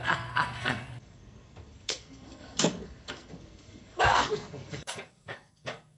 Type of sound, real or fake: fake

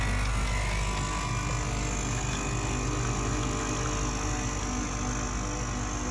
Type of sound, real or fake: real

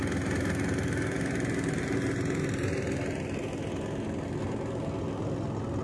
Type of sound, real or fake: real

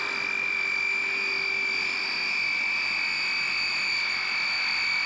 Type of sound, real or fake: real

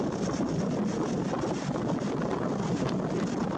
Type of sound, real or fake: real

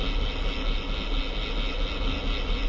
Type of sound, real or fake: real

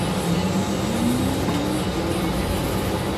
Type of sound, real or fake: real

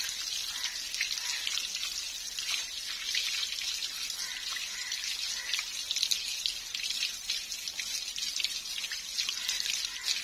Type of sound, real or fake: real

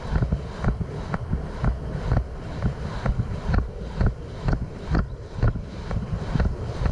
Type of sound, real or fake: real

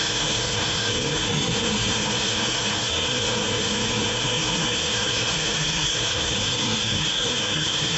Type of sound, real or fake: fake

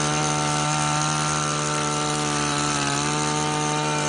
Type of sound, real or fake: real